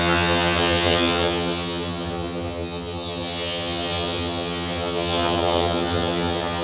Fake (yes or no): yes